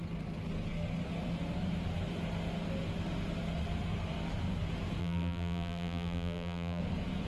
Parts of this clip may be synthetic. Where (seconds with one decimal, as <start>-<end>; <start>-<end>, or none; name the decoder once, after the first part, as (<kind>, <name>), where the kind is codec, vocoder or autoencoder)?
5.0-6.8 (vocoder, BigVGAN v2)